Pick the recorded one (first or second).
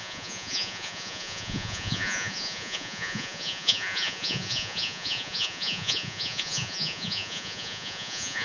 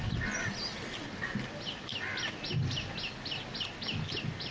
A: second